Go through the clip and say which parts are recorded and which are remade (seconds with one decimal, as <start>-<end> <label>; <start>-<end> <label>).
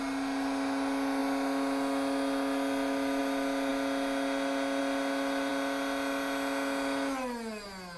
0.0-8.0 recorded